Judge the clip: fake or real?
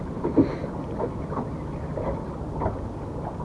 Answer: real